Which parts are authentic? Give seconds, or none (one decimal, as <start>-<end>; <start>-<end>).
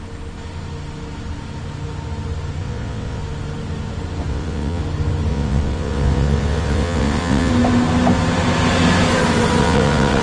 0.0-2.6; 3.2-4.3; 4.8-5.3; 7.5-9.6